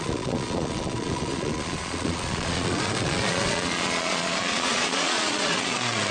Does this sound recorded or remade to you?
remade